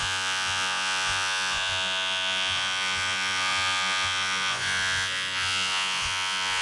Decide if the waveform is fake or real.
fake